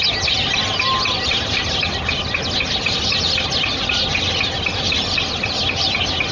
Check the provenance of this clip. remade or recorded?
recorded